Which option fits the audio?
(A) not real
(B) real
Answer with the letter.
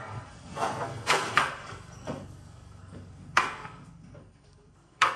A